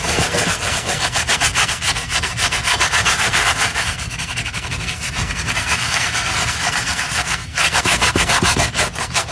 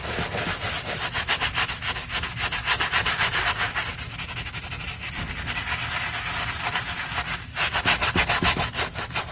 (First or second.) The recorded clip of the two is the second